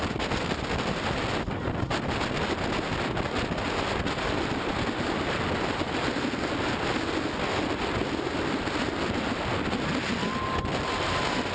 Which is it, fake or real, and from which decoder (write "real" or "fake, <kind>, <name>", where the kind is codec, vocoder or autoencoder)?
real